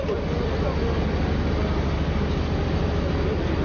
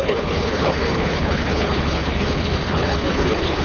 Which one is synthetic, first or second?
second